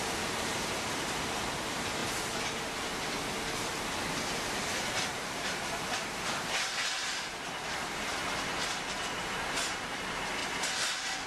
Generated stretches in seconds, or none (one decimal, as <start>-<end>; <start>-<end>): 0.0-2.0; 3.5-10.4